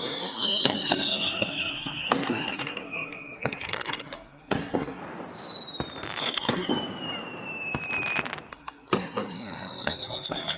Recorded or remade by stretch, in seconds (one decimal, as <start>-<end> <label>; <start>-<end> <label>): 0.0-5.0 remade; 5.0-6.2 recorded; 6.2-6.7 remade; 6.7-8.5 recorded; 8.5-10.6 remade